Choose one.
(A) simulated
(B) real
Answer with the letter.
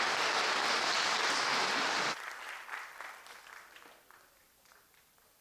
B